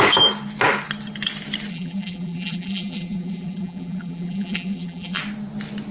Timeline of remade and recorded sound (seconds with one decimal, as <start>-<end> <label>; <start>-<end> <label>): 0.0-1.7 recorded; 1.7-5.2 remade; 5.2-5.9 recorded